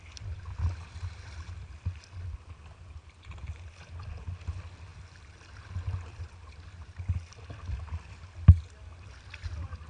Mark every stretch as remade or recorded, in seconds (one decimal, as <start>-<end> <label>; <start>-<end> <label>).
0.0-9.9 recorded